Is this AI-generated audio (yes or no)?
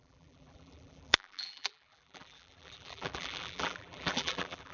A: yes